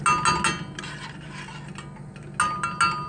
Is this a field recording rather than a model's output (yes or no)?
yes